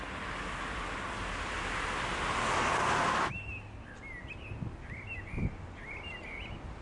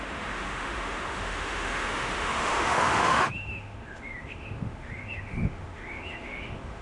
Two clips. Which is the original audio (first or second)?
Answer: first